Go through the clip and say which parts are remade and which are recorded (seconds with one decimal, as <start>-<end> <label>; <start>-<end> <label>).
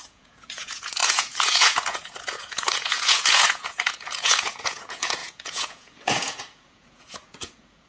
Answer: 0.0-7.9 remade